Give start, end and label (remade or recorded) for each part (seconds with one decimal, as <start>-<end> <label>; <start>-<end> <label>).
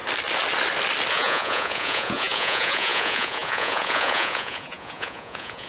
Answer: 0.0-1.1 recorded; 1.1-5.7 remade